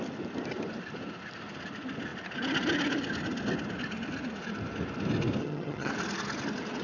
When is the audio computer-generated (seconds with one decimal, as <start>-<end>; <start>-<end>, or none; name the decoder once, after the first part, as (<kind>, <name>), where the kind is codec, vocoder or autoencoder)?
5.4-5.9 (vocoder, HiFi-GAN)